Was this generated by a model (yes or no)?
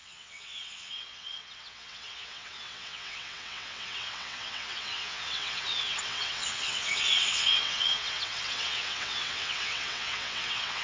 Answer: yes